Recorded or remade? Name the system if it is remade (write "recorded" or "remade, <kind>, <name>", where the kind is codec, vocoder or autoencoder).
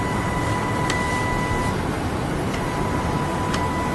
recorded